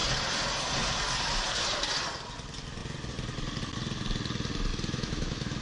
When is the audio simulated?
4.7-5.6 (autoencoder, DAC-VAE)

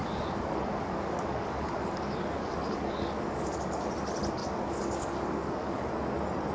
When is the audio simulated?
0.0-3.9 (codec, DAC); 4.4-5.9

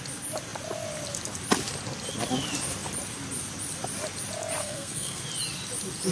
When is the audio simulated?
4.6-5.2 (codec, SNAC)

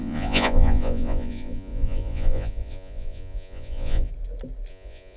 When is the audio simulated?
0.0-4.1 (vocoder, Vocos); 4.7-5.2

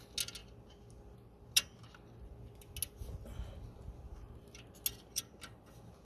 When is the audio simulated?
none

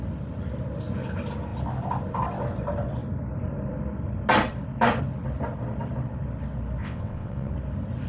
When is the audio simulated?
6.8-7.5 (vocoder, WaveNeXt)

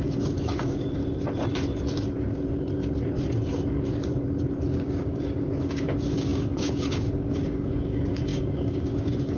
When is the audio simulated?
0.0-1.0 (codec, DAC); 4.9-9.4